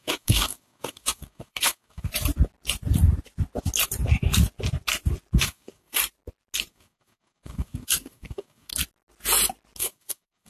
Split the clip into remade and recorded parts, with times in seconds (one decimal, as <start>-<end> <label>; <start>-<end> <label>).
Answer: 0.0-2.1 remade; 2.1-5.4 recorded; 5.4-6.0 remade; 6.0-6.7 recorded; 6.7-8.7 remade; 8.7-9.8 recorded; 9.8-10.5 remade